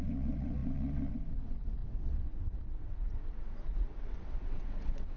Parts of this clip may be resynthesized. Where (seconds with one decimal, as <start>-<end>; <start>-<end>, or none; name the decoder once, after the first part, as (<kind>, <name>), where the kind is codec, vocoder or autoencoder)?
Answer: 0.0-5.2 (vocoder, WaveNeXt)